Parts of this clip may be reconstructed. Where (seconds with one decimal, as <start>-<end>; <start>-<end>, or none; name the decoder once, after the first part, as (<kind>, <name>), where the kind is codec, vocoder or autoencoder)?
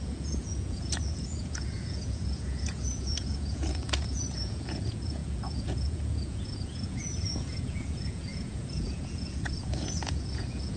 0.0-10.8 (vocoder, Vocos)